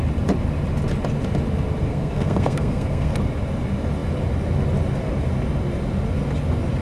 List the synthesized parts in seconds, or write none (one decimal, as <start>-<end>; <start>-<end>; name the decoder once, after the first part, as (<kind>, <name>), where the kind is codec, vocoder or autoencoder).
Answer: 1.9-3.1 (codec, SNAC)